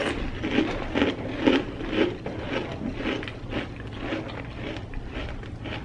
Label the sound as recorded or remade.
recorded